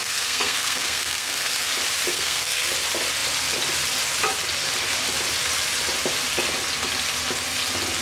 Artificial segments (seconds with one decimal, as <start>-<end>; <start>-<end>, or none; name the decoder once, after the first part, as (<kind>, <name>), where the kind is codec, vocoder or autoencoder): 0.0-1.7 (codec, SNAC); 2.1-2.7